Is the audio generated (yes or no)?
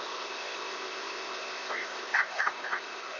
yes